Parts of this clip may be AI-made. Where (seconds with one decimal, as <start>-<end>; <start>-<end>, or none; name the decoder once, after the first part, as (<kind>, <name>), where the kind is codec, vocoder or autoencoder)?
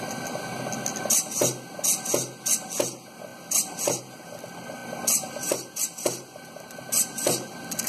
none